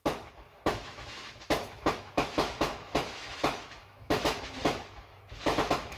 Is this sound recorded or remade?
remade